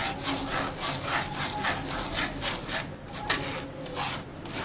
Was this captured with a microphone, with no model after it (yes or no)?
yes